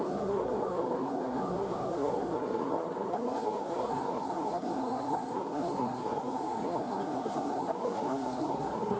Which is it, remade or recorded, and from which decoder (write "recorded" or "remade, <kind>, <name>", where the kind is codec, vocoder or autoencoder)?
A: remade, codec, SNAC